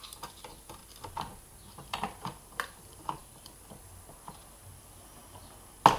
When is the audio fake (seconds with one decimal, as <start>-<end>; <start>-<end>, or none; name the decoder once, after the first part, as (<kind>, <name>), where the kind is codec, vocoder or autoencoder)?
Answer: 0.0-0.8 (vocoder, BigVGAN v2); 1.9-4.6